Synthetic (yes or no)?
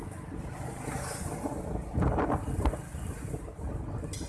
no